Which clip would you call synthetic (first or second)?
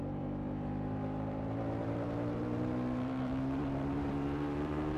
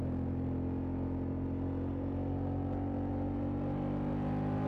first